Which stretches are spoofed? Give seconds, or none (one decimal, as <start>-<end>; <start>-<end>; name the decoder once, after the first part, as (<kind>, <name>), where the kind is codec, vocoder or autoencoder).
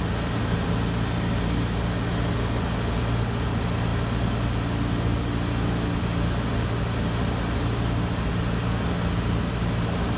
none